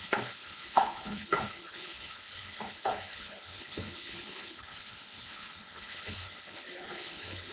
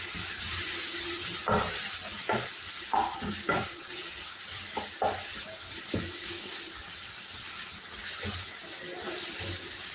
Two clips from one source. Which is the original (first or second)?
second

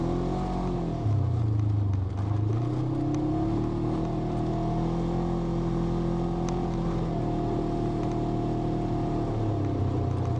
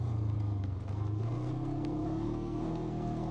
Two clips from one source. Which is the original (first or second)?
first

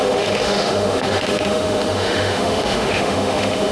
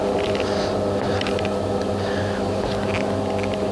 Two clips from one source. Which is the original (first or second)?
second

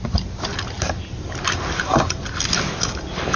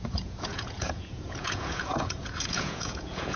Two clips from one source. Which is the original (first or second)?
first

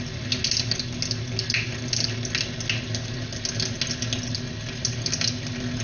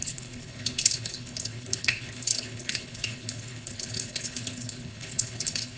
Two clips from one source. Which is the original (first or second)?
first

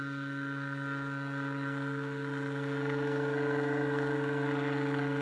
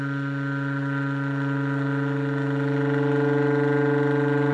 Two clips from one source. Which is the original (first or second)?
second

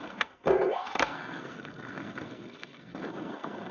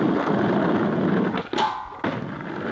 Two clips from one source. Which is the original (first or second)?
second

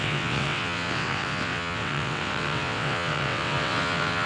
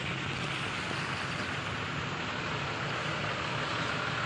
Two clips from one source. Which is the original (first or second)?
second